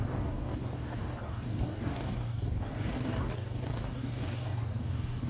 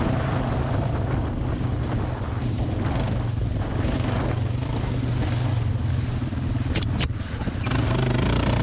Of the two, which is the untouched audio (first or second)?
second